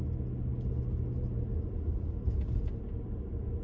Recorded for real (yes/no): yes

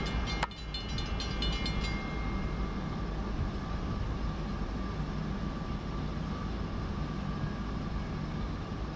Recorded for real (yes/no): yes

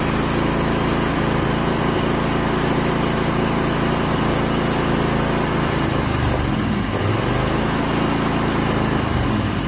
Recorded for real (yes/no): yes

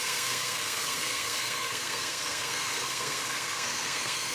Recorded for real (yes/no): no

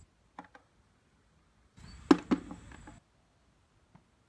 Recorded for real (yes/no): yes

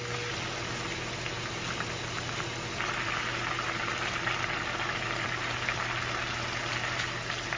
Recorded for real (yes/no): yes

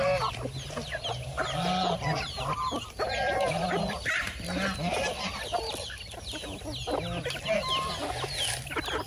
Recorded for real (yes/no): yes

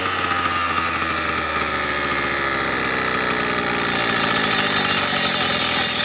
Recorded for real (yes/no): yes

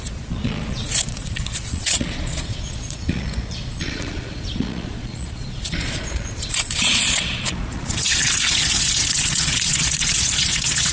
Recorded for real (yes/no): no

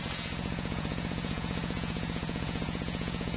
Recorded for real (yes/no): no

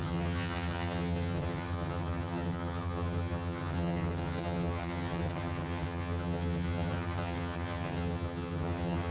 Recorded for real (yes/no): no